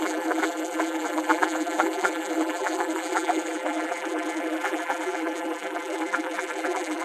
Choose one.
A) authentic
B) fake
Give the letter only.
B